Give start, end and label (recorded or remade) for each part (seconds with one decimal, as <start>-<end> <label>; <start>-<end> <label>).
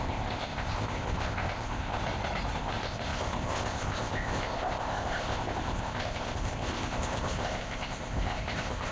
0.0-2.0 remade; 2.0-2.6 recorded; 2.6-8.9 remade